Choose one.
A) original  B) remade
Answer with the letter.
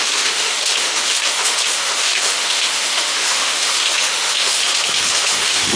B